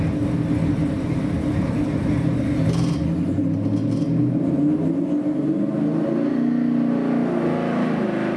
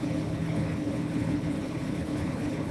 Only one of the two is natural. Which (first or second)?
first